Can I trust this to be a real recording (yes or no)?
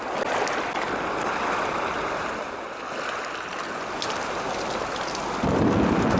yes